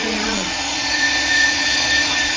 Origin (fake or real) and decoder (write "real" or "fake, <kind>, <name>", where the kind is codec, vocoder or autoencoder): fake, vocoder, Vocos